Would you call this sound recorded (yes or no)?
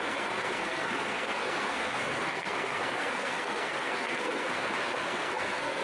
no